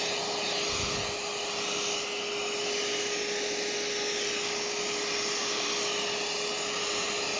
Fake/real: real